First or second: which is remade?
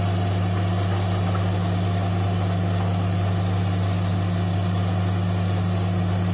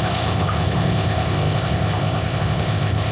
second